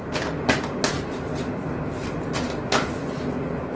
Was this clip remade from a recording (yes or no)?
no